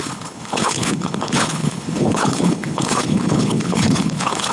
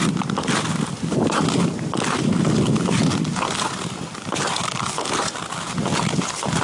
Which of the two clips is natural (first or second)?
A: second